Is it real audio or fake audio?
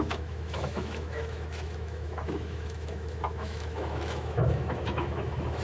fake